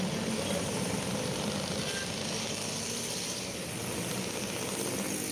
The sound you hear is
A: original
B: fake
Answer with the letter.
A